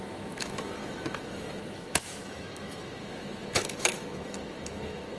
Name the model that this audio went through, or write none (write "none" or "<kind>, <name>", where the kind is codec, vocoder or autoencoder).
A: autoencoder, DAC-VAE